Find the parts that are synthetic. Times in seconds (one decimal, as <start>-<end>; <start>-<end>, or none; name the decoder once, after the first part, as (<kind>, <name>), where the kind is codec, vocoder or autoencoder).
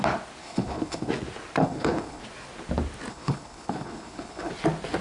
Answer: 0.4-1.1 (codec, HILCodec); 1.6-2.2; 3.1-4.5